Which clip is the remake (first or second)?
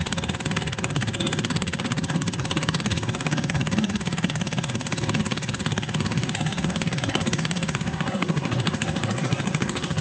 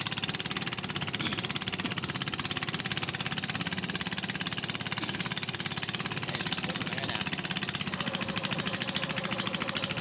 first